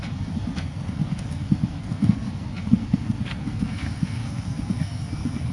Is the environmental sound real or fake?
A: fake